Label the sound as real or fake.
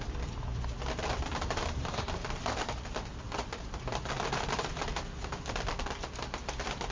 fake